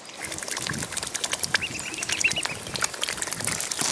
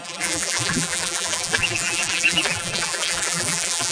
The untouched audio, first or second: first